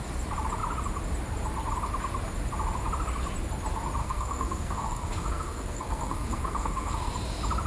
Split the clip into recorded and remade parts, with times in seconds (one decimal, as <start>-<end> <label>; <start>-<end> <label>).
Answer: 0.0-4.0 recorded; 4.0-7.1 remade; 7.1-7.7 recorded